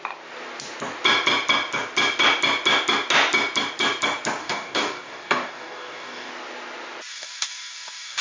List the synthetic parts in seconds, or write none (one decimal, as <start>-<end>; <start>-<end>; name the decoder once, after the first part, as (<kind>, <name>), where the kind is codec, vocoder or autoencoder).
4.4-6.3 (codec, DAC); 7.1-8.2